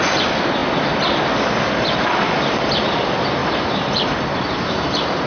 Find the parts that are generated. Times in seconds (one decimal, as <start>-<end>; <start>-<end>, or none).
3.4-5.3